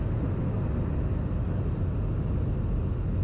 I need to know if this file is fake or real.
real